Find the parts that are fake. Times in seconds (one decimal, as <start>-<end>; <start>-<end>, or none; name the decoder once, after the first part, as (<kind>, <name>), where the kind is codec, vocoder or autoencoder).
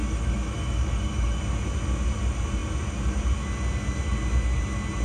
0.0-1.4 (autoencoder, DAC-VAE)